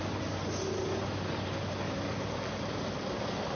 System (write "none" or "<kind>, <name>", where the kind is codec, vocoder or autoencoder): none